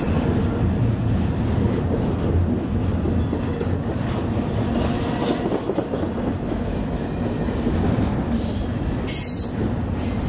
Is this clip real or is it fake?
real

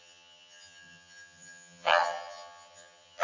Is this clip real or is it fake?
fake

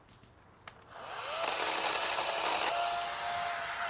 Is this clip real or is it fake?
real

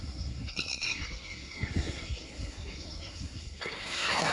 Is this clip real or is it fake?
fake